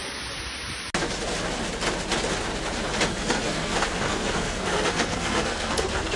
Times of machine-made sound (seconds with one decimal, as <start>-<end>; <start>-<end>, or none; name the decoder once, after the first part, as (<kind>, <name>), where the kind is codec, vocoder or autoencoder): 3.1-6.2 (codec, SNAC)